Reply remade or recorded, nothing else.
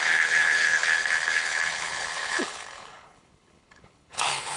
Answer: remade